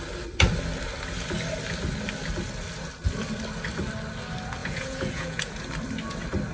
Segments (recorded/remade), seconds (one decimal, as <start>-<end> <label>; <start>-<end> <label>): 0.0-4.6 recorded; 4.6-5.6 remade; 5.6-6.5 recorded